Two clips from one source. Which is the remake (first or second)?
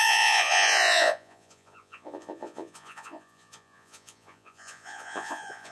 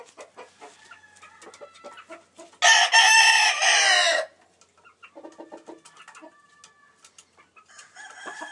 first